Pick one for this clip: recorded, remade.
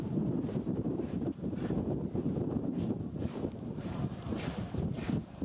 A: remade